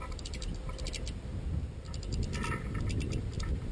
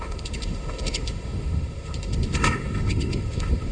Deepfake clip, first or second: second